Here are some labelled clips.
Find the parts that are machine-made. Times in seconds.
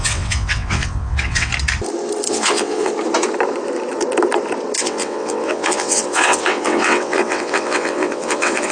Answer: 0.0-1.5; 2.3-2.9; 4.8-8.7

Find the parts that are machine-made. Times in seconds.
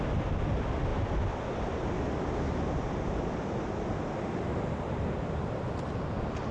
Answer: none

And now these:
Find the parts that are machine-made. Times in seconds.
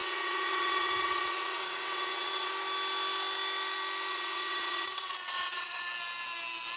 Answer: 0.0-2.5; 4.1-5.8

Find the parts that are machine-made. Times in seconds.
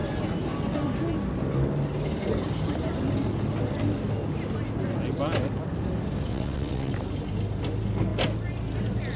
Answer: 6.3-6.9